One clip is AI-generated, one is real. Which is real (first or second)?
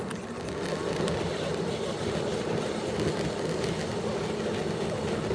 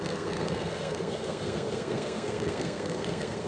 first